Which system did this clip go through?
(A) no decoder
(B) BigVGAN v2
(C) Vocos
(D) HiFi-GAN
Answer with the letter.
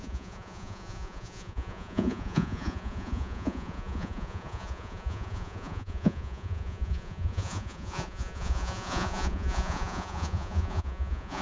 C